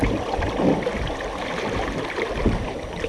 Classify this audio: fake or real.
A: real